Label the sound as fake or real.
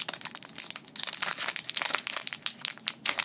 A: real